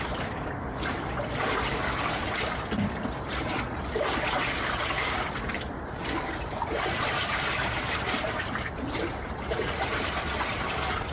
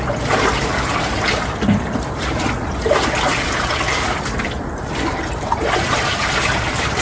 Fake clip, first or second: first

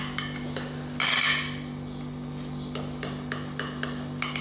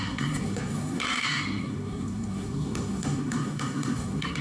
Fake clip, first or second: second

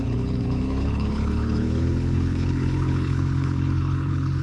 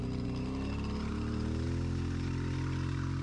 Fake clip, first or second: first